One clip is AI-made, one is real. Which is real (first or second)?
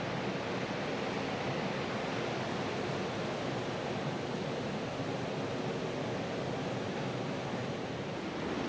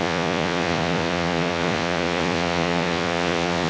first